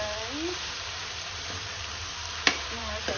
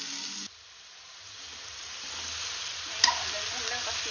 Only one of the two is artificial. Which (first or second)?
first